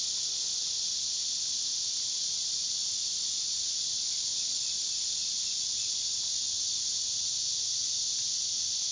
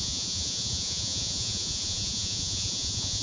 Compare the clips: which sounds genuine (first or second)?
first